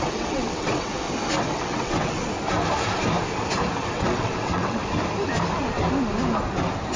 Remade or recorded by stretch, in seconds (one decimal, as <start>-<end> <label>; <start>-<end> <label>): 0.0-0.9 remade; 0.9-1.4 recorded; 1.4-2.2 remade; 2.2-3.9 recorded; 3.9-4.8 remade; 4.8-7.0 recorded